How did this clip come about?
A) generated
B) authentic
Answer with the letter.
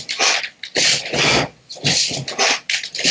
B